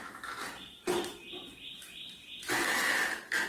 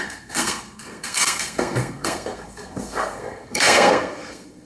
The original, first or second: first